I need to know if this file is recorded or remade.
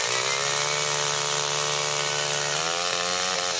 recorded